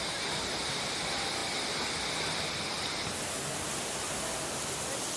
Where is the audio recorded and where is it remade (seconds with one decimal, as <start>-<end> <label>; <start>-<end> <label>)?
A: 0.0-5.2 recorded